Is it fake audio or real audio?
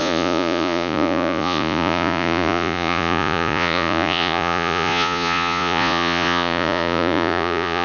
fake